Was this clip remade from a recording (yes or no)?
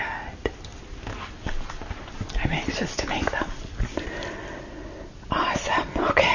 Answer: no